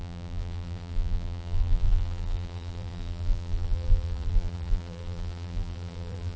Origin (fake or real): fake